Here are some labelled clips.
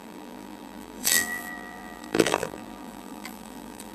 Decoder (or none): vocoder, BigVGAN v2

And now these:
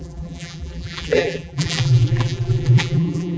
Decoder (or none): vocoder, BigVGAN v2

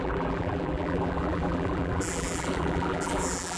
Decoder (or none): vocoder, BigVGAN v2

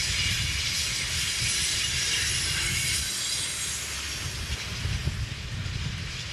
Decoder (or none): none